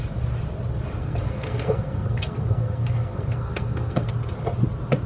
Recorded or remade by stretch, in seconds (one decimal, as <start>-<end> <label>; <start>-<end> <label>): 0.0-1.0 recorded; 1.0-4.1 remade; 4.1-5.1 recorded